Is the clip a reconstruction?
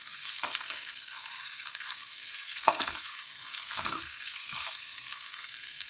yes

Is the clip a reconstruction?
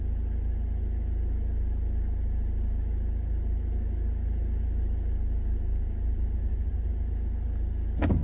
no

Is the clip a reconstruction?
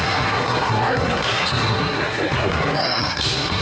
yes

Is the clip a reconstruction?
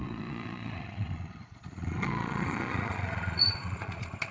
yes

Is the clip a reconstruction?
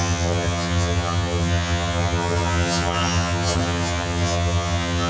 yes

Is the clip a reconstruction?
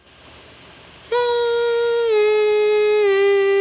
no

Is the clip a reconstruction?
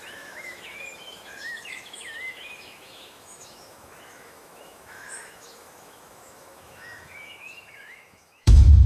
yes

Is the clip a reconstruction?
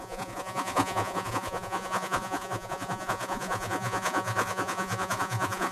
yes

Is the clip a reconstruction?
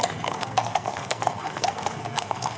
yes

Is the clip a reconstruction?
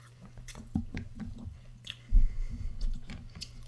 yes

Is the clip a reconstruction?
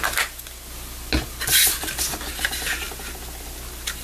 no